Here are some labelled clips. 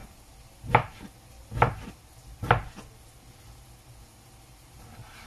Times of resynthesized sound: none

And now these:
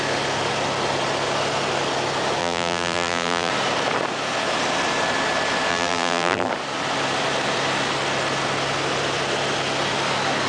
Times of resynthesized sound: 2.4-3.5 (vocoder, BigVGAN v2); 5.7-6.5